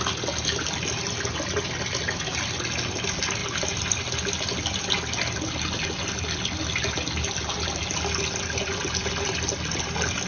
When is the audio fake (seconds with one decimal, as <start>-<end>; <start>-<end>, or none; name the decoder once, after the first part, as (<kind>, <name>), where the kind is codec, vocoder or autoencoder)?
none